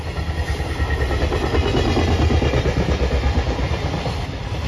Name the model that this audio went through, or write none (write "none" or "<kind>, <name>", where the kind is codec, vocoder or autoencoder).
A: none